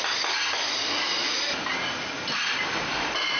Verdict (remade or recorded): recorded